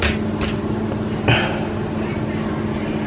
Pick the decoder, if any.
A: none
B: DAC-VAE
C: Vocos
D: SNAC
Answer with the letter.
A